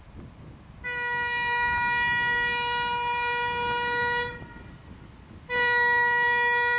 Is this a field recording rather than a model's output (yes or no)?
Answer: yes